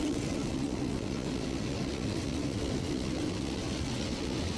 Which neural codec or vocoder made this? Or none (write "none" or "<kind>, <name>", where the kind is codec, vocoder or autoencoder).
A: vocoder, WaveNeXt